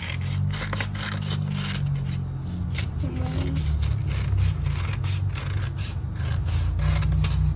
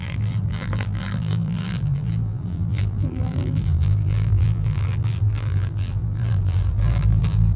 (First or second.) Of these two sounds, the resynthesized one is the second